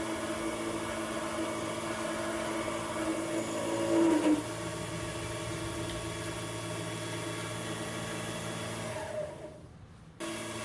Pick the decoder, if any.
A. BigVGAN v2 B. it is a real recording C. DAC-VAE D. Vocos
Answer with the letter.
B